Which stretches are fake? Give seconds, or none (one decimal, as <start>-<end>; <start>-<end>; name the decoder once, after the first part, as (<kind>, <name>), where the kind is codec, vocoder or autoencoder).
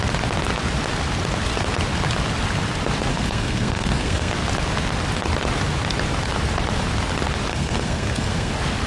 3.1-4.3 (codec, SNAC); 7.5-8.5